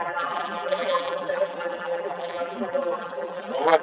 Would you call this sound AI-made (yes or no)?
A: yes